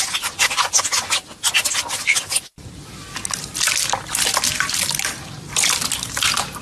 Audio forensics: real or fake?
real